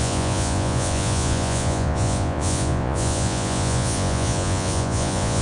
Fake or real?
fake